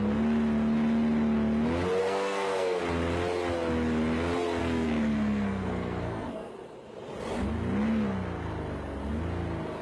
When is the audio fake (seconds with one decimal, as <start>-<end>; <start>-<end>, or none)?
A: 2.0-2.8; 4.6-6.5